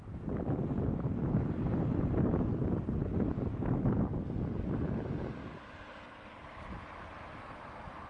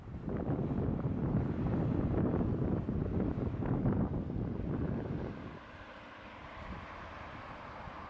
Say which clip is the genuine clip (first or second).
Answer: first